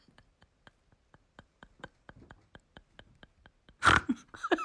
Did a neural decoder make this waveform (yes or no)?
no